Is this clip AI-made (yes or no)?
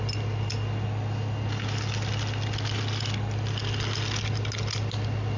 no